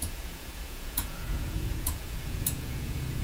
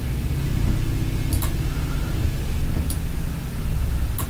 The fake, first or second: first